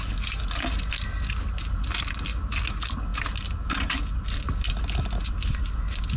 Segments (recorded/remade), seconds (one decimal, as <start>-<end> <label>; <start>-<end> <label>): 0.0-6.2 recorded

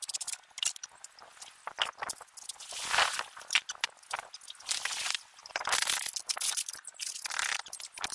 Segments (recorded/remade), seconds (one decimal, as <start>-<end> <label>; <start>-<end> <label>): 0.0-8.1 recorded

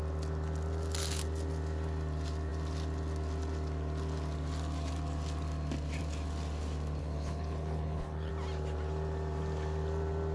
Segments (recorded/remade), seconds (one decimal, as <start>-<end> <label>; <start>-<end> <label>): 0.0-7.0 recorded; 7.0-8.3 remade; 8.3-10.3 recorded